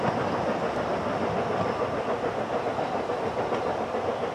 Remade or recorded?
remade